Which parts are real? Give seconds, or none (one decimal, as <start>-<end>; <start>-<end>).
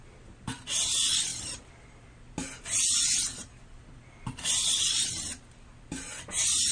0.0-6.7